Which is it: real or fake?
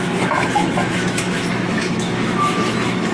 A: fake